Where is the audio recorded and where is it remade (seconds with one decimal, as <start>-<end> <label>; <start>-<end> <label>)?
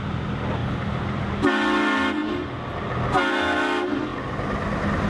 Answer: 0.0-0.6 recorded; 0.6-1.3 remade; 1.3-4.1 recorded; 4.1-5.1 remade